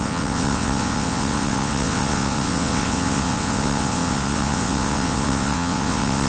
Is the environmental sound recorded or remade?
remade